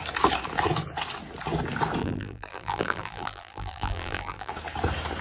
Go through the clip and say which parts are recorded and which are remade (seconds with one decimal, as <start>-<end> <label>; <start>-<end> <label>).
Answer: 0.0-2.0 recorded; 2.0-4.5 remade; 4.5-5.2 recorded